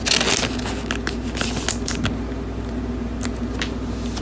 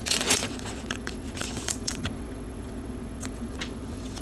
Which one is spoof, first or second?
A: second